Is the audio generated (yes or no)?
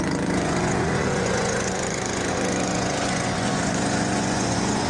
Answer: yes